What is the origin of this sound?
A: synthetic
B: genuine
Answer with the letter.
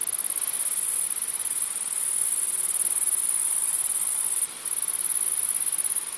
B